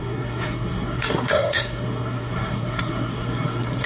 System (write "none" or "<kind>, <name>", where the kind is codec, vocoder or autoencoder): codec, SNAC